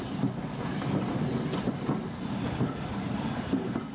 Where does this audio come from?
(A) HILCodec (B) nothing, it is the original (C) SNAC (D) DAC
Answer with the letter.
B